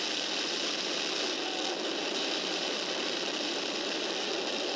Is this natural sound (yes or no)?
no